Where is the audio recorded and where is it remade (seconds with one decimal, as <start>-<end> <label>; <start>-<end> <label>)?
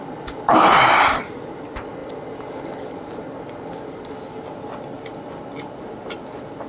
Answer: 0.0-6.7 recorded